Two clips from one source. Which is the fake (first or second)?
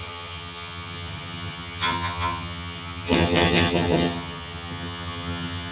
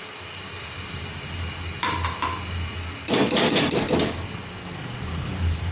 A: first